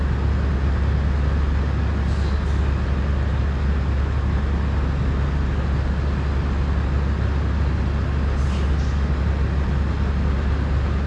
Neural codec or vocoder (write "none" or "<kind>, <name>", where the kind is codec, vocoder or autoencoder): none